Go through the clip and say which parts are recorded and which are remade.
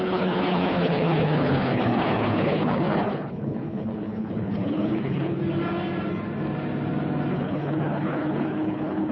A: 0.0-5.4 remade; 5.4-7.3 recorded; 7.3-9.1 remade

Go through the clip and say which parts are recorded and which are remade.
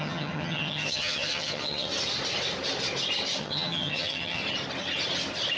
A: 0.0-1.9 remade; 1.9-3.4 recorded; 3.4-4.4 remade; 4.4-5.6 recorded